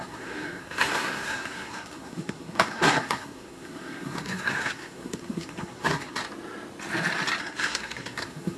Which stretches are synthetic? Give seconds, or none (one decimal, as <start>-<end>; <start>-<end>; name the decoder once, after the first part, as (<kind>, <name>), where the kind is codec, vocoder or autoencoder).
0.0-6.2 (codec, SNAC); 7.4-8.6